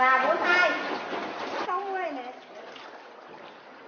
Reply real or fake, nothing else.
real